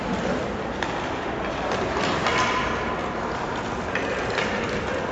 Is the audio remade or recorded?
recorded